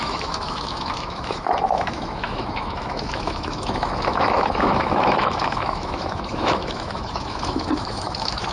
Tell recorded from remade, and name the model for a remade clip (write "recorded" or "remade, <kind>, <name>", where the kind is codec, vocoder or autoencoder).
remade, autoencoder, DAC-VAE